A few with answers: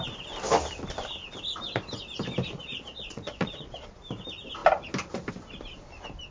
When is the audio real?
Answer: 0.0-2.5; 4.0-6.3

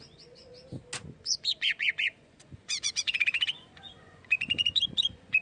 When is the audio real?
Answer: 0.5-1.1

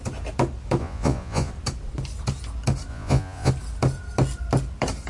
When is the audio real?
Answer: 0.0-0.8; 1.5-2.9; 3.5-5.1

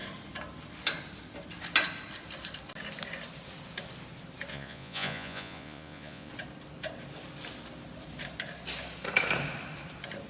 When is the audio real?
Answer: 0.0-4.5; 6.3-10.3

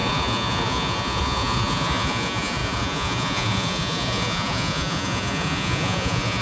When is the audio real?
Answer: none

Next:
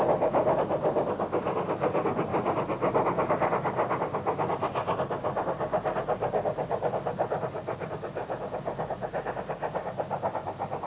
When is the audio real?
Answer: 0.0-8.2; 9.1-10.9

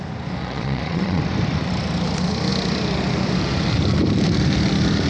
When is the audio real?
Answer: 0.0-0.4; 1.2-5.1